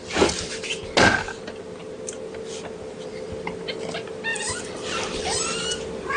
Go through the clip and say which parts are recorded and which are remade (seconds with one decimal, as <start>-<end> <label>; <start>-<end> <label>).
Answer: 0.0-4.3 recorded; 4.3-5.2 remade; 5.2-6.2 recorded